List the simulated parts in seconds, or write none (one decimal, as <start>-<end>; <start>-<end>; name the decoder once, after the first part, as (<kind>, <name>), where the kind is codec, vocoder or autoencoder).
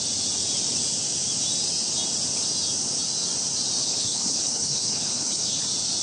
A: 3.8-5.6 (codec, HILCodec)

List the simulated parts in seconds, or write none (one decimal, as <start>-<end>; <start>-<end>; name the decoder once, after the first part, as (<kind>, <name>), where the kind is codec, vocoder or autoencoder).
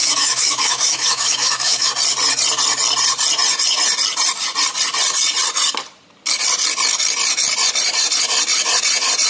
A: 0.0-1.9 (autoencoder, DAC-VAE)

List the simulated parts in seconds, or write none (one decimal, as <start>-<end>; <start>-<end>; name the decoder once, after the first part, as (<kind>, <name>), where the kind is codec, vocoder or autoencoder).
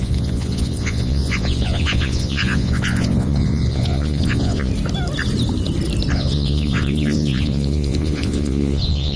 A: 0.0-4.7 (vocoder, Vocos); 6.1-9.2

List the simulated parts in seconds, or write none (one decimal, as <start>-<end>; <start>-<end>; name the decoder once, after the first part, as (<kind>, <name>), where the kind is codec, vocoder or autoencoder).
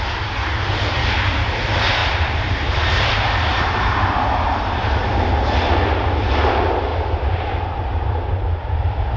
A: 2.0-2.6 (vocoder, BigVGAN v2); 3.5-5.0; 6.9-9.2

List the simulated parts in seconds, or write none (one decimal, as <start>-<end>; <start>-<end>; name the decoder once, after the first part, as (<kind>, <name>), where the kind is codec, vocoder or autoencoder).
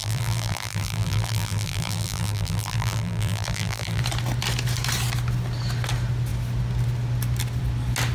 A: 0.0-4.0 (vocoder, BigVGAN v2)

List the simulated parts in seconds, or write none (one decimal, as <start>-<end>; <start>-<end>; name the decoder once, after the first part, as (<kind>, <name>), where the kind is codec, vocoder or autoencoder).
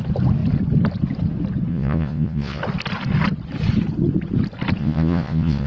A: 1.7-2.6 (vocoder, Vocos); 4.8-5.7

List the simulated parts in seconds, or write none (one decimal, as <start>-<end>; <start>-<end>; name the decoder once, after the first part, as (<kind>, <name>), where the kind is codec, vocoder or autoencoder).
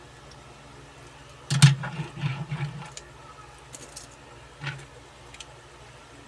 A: none